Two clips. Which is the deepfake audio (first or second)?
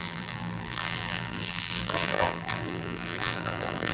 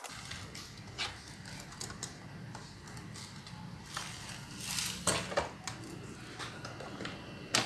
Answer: first